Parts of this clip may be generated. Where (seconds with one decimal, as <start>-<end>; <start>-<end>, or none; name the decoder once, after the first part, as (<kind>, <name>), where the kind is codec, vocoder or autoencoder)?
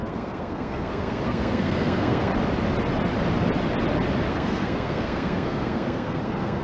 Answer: 0.0-2.3 (codec, SNAC); 4.3-6.6